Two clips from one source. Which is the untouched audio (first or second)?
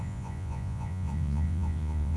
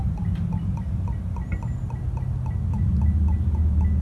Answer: second